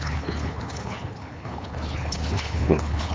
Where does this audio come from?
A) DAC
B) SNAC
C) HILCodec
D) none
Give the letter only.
C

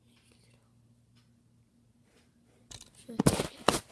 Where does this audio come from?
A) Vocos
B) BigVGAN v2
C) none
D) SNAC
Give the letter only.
C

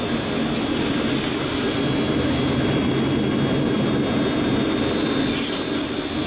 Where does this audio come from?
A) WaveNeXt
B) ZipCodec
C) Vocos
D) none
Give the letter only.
D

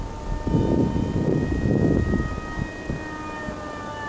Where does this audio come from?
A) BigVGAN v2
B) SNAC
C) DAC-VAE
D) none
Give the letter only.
D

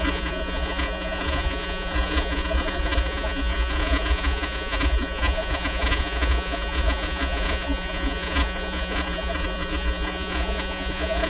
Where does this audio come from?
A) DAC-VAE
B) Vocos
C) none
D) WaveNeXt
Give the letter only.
B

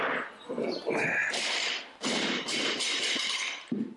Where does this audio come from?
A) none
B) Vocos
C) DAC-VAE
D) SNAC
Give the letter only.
A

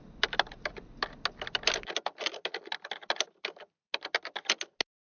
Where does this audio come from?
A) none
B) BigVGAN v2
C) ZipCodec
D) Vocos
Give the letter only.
A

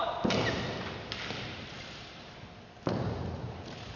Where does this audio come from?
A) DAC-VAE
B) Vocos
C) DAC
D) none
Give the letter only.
D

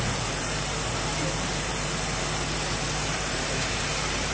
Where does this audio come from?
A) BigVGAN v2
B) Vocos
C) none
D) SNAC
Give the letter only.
A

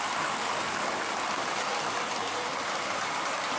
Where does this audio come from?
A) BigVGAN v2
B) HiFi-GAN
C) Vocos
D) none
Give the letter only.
D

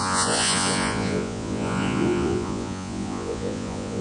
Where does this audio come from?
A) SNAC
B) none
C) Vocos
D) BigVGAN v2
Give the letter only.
C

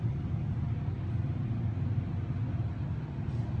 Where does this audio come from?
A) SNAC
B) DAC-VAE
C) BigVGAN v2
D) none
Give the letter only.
D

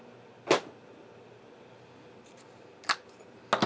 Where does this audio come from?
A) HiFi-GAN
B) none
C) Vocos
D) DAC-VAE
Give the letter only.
B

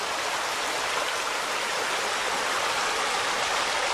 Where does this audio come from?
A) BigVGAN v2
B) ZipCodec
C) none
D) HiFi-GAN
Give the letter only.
C